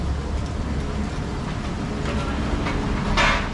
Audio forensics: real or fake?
real